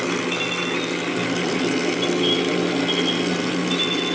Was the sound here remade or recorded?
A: recorded